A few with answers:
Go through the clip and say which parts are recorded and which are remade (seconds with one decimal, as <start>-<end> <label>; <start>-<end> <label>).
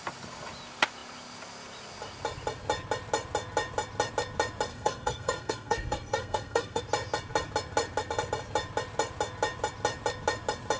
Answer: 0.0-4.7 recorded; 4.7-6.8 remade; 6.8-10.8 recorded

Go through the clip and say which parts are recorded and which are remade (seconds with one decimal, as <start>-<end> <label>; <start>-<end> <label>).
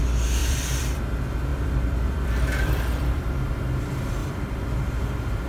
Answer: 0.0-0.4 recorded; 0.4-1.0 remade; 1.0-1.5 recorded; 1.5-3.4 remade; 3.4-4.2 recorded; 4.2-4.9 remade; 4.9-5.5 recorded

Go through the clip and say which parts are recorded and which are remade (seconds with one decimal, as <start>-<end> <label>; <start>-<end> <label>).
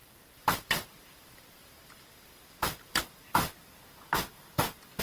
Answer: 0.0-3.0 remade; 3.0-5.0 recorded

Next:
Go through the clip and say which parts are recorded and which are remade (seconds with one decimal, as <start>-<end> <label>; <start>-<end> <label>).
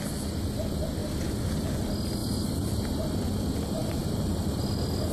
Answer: 0.0-3.8 recorded; 3.8-4.6 remade; 4.6-5.1 recorded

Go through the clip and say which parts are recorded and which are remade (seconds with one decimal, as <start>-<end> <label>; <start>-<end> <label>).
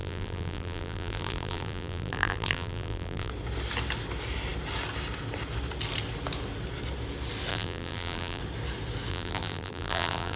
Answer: 0.0-3.3 remade; 3.3-7.5 recorded; 7.5-8.4 remade; 8.4-9.1 recorded; 9.1-10.4 remade